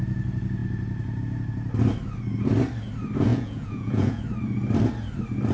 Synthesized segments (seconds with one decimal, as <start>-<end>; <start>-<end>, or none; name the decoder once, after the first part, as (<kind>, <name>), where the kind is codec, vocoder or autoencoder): 3.3-4.2 (vocoder, Vocos)